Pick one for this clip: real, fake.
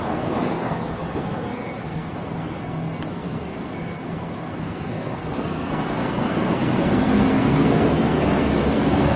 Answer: fake